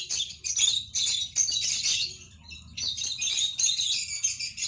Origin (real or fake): real